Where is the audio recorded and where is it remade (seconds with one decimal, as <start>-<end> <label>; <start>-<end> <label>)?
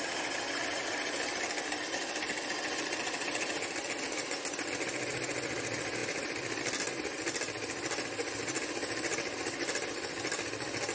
0.0-10.9 recorded